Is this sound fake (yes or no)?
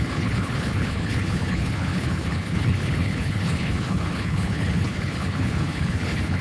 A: yes